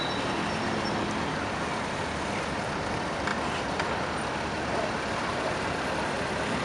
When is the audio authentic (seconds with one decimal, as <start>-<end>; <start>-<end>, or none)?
0.0-6.6